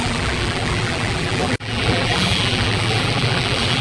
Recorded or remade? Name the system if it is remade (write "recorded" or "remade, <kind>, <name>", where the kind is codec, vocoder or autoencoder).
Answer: remade, vocoder, BigVGAN v2